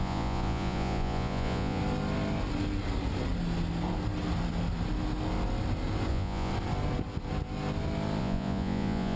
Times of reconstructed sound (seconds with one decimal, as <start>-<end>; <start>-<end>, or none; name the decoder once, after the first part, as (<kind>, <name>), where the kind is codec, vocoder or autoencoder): 0.0-1.8 (vocoder, Vocos); 6.1-6.5; 8.2-9.2